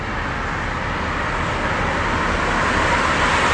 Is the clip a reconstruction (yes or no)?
no